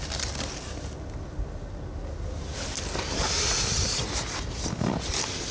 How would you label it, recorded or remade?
recorded